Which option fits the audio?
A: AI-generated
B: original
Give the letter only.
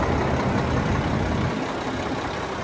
B